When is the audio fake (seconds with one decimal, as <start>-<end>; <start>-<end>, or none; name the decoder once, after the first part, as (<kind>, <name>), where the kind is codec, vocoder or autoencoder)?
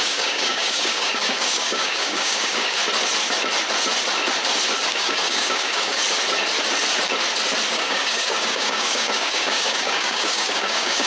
0.0-2.8 (codec, DAC); 4.9-6.0; 7.7-11.1